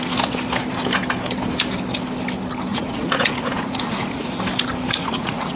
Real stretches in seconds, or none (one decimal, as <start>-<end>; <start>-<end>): 0.0-2.7; 4.3-5.0